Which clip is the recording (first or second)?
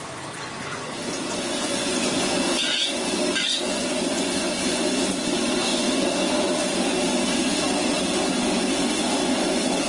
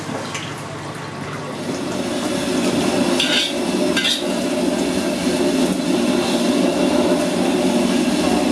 second